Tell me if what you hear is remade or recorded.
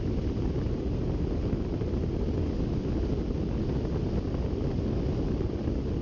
recorded